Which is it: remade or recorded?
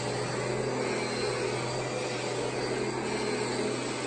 recorded